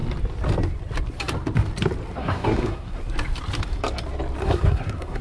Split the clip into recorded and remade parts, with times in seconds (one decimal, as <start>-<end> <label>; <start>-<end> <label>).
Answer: 0.0-2.2 recorded; 2.2-3.0 remade; 3.0-4.4 recorded; 4.4-5.2 remade